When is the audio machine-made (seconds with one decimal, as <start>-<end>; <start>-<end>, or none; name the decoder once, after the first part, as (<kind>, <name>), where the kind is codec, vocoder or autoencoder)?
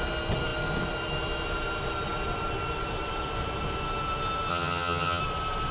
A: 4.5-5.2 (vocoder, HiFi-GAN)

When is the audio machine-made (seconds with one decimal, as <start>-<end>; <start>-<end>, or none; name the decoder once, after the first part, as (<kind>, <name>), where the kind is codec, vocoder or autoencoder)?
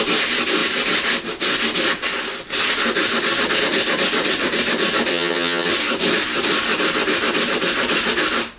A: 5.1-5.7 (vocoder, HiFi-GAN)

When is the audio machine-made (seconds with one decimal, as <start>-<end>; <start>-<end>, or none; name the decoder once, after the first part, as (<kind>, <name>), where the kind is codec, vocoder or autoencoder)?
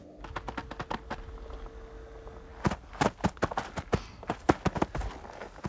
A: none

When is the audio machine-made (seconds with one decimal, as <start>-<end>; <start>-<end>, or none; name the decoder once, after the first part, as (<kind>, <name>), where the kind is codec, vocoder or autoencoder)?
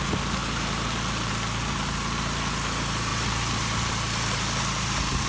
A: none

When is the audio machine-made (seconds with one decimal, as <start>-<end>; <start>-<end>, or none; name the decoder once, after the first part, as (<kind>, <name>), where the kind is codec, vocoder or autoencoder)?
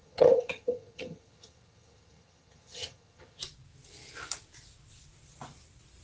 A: 0.0-3.4 (vocoder, HiFi-GAN)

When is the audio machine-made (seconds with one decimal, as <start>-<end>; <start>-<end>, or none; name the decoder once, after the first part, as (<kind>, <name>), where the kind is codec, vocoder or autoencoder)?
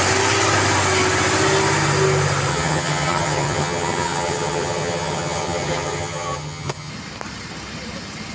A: 2.5-6.9 (vocoder, HiFi-GAN)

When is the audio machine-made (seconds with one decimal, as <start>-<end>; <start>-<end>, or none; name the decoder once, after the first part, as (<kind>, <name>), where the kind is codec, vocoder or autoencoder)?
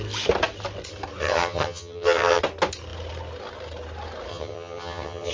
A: 1.2-2.4 (vocoder, HiFi-GAN); 4.3-5.3